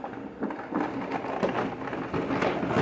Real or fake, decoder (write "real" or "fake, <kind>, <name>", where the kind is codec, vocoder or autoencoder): real